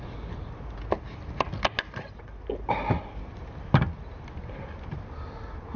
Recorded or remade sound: recorded